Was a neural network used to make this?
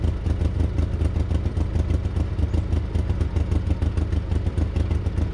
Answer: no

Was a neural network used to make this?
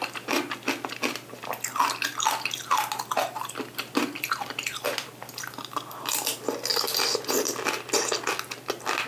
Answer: no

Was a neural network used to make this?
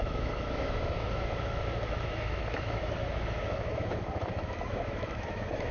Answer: yes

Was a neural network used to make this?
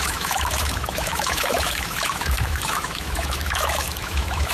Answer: yes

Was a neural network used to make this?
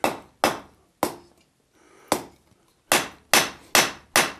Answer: no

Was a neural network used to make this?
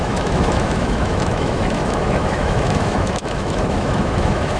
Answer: yes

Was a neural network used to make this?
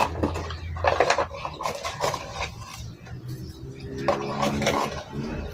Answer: no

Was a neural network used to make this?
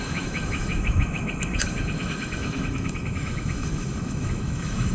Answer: yes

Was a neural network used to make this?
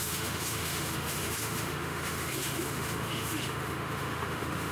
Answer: yes